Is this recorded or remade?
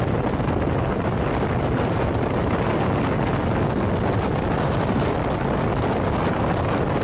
recorded